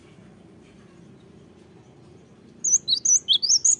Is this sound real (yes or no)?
yes